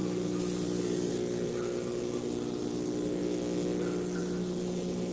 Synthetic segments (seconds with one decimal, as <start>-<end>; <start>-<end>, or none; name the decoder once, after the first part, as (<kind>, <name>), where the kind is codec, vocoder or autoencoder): none